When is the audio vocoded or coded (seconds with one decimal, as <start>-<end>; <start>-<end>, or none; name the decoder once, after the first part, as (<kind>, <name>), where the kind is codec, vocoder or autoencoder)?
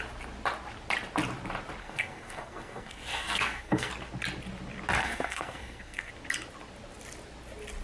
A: 1.8-3.9 (codec, SNAC); 5.0-6.1